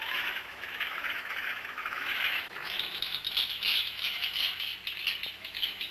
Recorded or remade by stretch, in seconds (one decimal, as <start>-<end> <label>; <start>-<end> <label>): 0.0-4.7 remade; 4.7-5.3 recorded; 5.3-5.9 remade